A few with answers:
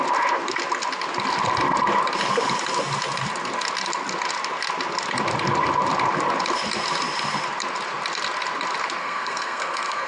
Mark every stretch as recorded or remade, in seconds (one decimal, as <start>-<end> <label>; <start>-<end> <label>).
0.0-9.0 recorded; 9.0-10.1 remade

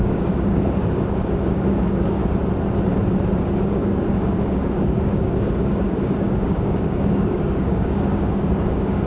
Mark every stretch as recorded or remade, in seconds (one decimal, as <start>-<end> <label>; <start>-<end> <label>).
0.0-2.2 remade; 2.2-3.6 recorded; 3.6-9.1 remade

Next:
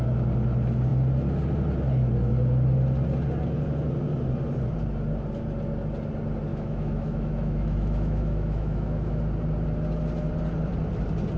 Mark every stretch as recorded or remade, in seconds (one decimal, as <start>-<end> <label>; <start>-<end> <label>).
0.0-6.5 recorded; 6.5-9.2 remade; 9.2-11.4 recorded

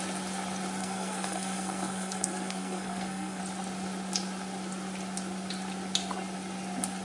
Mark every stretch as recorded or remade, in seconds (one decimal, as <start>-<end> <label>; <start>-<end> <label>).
0.0-0.8 recorded; 0.8-3.4 remade; 3.4-7.0 recorded